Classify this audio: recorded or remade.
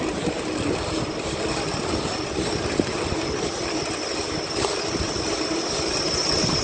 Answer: recorded